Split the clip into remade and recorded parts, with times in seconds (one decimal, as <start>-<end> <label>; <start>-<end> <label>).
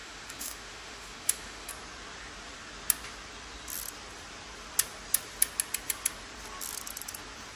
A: 0.0-1.7 remade; 1.7-7.6 recorded